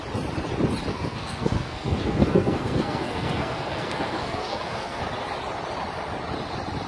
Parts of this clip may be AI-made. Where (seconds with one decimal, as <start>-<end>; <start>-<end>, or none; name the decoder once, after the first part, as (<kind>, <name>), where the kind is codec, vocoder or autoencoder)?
0.9-5.0 (codec, SNAC)

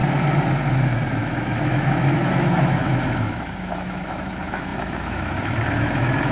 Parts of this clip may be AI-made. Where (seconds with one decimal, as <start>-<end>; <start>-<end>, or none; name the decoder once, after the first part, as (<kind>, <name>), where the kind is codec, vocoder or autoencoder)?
0.7-6.3 (autoencoder, DAC-VAE)

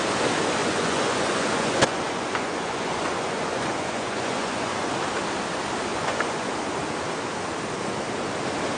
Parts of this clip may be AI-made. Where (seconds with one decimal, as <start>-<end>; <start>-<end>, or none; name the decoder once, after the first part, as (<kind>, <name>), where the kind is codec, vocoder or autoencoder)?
0.6-4.9 (vocoder, Vocos); 5.9-6.5

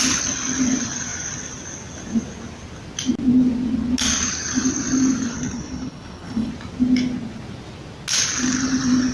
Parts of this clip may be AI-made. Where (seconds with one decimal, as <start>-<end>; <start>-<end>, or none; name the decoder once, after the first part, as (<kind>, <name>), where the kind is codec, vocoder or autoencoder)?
5.3-6.5 (codec, HILCodec)

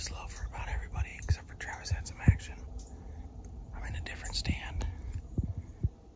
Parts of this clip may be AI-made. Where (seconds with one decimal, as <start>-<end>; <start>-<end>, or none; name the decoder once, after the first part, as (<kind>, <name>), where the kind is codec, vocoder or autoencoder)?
none

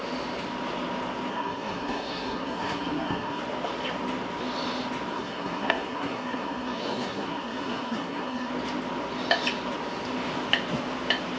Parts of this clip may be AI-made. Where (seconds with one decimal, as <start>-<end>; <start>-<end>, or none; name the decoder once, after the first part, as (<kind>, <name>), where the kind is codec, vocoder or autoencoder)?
1.3-3.4 (codec, SNAC); 5.1-8.5

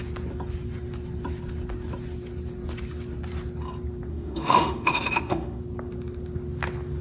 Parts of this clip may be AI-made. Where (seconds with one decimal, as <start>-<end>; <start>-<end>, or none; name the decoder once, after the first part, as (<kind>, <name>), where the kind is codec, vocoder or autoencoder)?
4.1-5.6 (autoencoder, DAC-VAE)